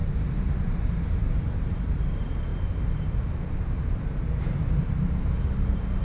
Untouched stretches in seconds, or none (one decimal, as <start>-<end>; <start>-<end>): none